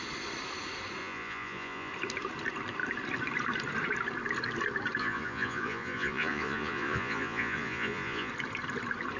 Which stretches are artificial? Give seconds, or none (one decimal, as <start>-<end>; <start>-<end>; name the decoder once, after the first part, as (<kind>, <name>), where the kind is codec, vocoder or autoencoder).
1.0-1.9 (vocoder, Vocos); 5.0-8.3